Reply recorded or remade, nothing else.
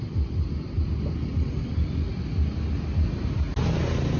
recorded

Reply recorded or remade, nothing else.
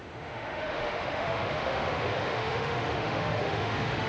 remade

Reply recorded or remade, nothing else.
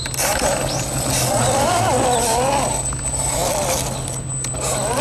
recorded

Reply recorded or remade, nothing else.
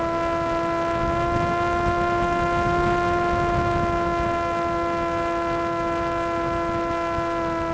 recorded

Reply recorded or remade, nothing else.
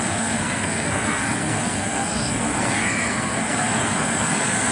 remade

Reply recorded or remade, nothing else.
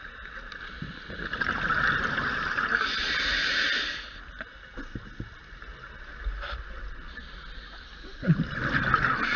recorded